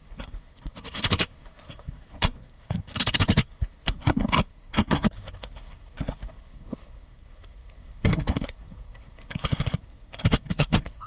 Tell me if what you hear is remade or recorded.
remade